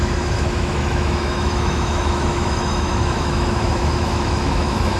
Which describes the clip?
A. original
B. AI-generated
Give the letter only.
B